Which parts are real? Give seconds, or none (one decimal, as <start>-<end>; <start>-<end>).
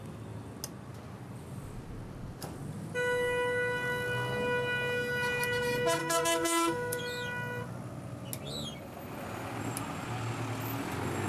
0.0-6.0; 7.0-11.3